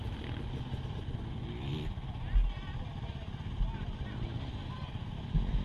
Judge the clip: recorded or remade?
recorded